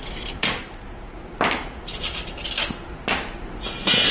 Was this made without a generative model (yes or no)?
yes